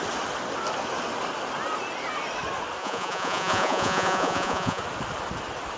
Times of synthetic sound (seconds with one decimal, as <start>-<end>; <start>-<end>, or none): 2.8-4.8